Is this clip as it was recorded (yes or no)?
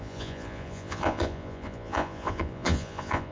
no